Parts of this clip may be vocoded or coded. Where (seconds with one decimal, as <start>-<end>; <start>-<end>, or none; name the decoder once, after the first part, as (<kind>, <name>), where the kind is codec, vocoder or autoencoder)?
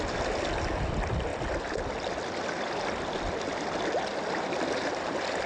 none